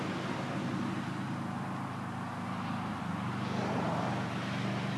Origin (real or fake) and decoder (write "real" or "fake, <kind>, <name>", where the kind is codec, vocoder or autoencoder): real